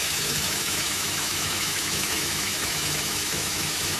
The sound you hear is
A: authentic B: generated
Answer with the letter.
B